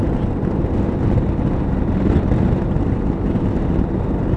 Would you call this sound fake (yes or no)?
no